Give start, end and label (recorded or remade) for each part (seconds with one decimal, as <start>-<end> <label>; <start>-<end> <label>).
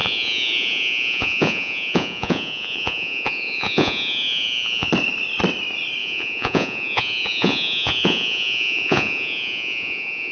0.0-4.9 remade; 4.9-6.0 recorded; 6.0-10.3 remade